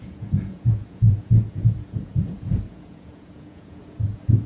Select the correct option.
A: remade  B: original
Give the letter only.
A